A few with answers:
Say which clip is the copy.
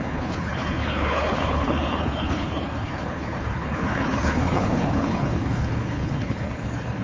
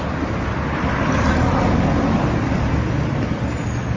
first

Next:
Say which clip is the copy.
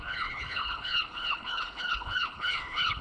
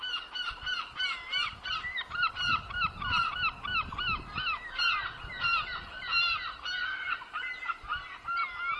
first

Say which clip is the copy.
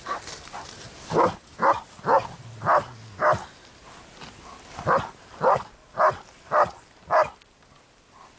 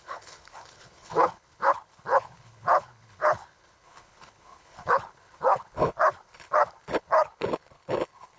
second